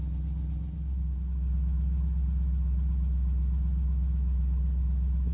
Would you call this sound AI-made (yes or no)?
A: no